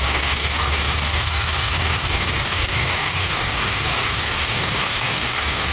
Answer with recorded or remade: remade